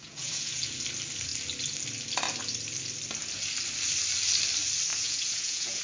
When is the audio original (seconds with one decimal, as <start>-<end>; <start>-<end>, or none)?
0.6-4.9